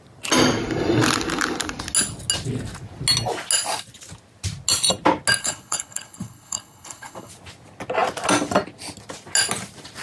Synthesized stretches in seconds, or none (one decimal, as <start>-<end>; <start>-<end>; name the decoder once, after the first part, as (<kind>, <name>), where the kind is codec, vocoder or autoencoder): 5.4-7.3 (codec, HILCodec)